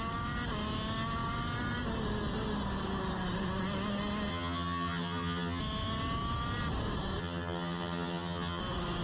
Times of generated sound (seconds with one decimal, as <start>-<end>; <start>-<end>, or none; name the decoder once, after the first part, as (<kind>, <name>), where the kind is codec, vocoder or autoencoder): 4.3-5.6 (vocoder, HiFi-GAN); 7.2-8.6